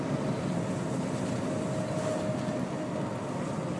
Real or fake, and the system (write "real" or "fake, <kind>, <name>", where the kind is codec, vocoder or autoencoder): real